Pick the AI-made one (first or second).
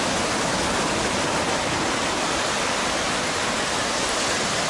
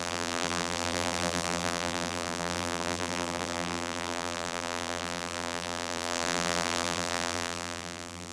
second